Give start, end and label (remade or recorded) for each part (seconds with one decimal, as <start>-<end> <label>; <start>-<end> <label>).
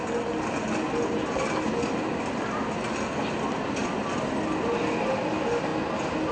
0.0-6.3 recorded